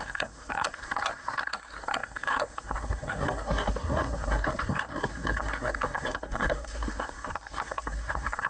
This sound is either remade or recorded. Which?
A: remade